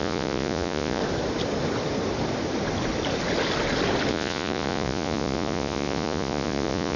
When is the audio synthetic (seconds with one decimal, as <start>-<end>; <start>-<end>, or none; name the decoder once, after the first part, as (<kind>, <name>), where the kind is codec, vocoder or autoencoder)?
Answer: 0.0-1.0 (vocoder, Vocos); 4.1-7.0